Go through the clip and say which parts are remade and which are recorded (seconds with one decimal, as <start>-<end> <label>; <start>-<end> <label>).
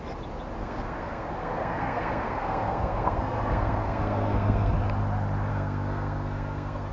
0.0-0.6 recorded; 0.6-4.7 remade; 4.7-5.5 recorded; 5.5-6.9 remade